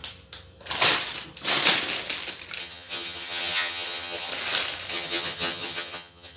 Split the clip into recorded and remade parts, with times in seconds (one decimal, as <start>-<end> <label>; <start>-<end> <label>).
0.0-2.6 recorded; 2.6-4.3 remade; 4.3-4.9 recorded; 4.9-6.4 remade